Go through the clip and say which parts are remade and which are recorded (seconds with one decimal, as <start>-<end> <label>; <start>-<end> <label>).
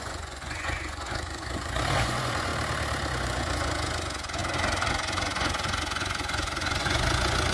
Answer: 0.0-2.5 remade; 2.5-3.1 recorded; 3.1-4.4 remade; 4.4-4.9 recorded; 4.9-7.5 remade